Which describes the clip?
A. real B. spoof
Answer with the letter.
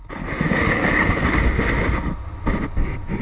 A